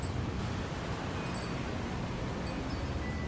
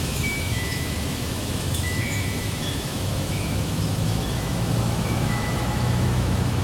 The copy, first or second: second